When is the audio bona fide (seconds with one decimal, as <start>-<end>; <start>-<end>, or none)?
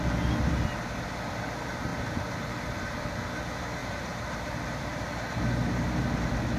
0.0-3.8; 5.4-6.6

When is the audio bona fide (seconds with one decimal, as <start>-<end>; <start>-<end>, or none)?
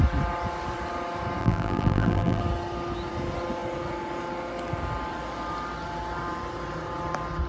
0.0-1.4; 2.4-7.5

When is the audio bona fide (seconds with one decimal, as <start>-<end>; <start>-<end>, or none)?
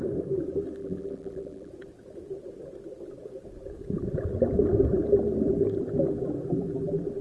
0.0-0.8; 1.7-7.2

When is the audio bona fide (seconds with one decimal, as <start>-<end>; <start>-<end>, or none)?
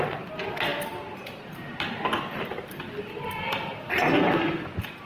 none